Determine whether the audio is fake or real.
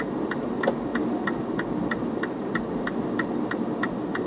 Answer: real